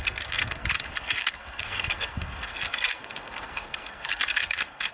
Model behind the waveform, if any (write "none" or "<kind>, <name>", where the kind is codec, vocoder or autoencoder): codec, SNAC